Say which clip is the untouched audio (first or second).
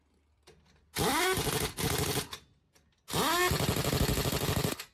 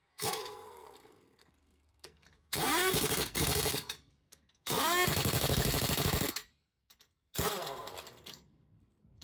first